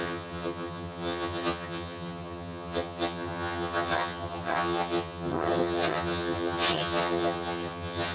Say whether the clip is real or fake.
fake